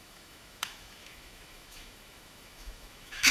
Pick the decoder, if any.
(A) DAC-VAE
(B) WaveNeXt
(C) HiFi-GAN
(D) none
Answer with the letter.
A